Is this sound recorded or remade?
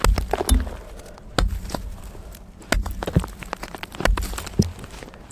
recorded